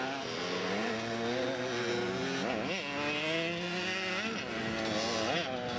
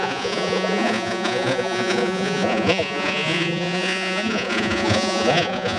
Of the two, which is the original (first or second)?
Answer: first